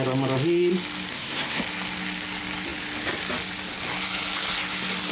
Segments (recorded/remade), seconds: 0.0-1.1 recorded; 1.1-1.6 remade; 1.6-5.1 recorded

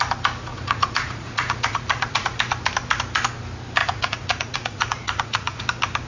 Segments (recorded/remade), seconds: 0.0-0.5 recorded; 0.5-2.4 remade; 2.4-3.8 recorded; 3.8-5.6 remade; 5.6-6.1 recorded